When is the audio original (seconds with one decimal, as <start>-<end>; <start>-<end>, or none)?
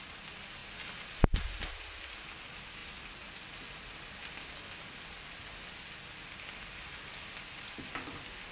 0.0-8.5